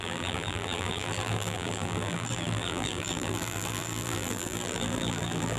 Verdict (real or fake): fake